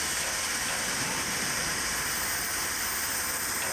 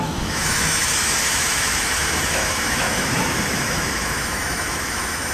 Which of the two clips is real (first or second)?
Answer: first